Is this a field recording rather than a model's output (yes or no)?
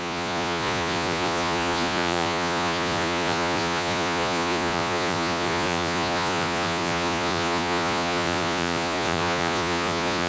no